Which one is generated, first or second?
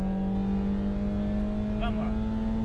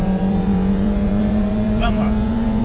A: second